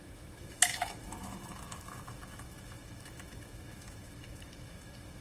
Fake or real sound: fake